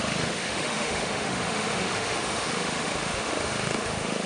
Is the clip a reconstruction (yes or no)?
yes